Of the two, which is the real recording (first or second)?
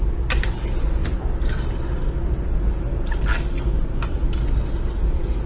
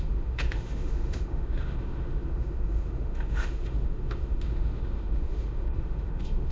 first